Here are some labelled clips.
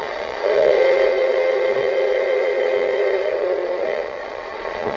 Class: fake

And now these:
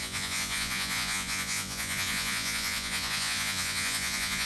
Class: fake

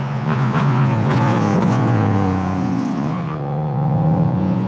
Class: fake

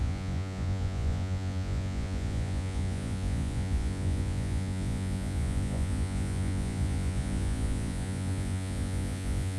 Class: fake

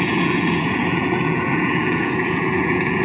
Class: fake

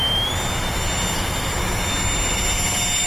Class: real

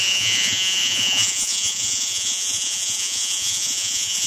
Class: fake